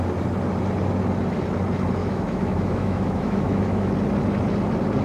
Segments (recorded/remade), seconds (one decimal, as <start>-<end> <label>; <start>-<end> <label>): 0.0-2.0 recorded; 2.0-3.9 remade; 3.9-5.0 recorded